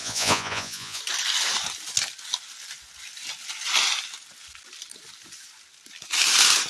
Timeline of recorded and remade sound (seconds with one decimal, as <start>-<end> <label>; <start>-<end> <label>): 0.0-1.0 remade; 1.0-6.7 recorded